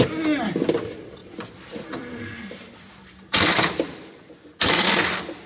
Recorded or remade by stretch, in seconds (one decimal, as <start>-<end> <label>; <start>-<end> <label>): 0.0-1.2 recorded; 1.2-4.1 remade; 4.1-5.5 recorded